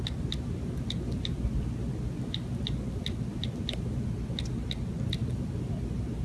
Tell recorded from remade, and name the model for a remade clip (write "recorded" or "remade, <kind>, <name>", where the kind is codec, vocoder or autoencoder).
recorded